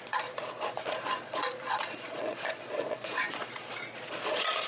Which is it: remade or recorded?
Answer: remade